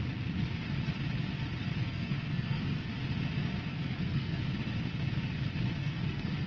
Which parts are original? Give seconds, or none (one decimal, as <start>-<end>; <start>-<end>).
0.0-1.8; 2.9-3.7; 4.4-5.8